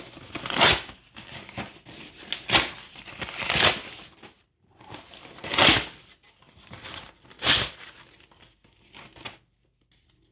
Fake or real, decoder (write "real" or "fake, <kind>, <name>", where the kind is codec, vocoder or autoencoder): real